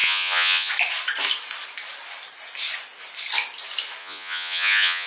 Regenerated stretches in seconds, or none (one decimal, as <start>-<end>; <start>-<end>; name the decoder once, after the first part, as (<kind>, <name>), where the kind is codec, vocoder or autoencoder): 0.0-0.7 (vocoder, Vocos); 4.0-5.1